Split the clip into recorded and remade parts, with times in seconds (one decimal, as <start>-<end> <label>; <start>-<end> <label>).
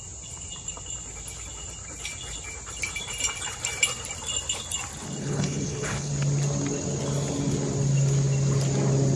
0.0-5.2 recorded; 5.2-6.1 remade; 6.1-9.2 recorded